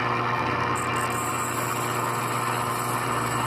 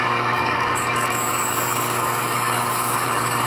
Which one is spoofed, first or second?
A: second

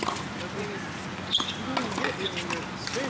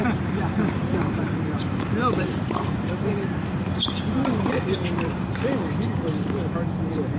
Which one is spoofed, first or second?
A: second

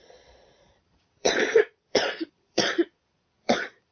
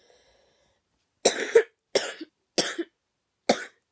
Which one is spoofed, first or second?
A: first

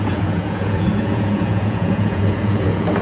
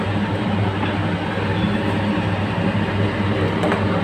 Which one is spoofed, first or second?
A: first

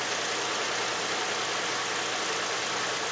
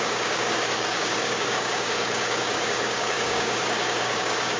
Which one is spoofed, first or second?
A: second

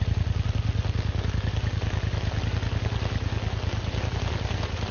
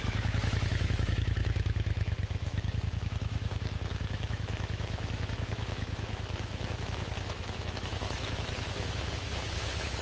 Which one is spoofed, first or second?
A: second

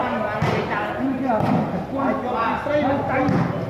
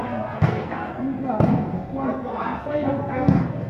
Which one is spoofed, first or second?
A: second